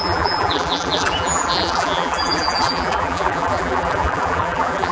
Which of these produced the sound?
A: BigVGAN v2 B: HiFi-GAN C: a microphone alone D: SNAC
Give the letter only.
A